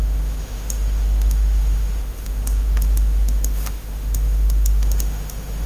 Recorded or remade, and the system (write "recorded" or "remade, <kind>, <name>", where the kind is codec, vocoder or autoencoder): remade, autoencoder, DAC-VAE